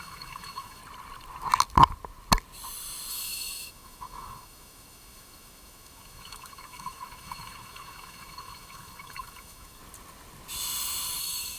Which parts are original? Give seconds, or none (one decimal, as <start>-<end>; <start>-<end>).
0.8-3.1; 9.8-11.2